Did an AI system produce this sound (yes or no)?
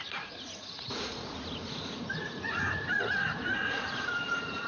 yes